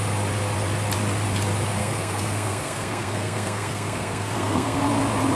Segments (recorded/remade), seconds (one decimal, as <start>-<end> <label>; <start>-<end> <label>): 0.0-1.8 recorded; 1.8-4.8 remade; 4.8-5.3 recorded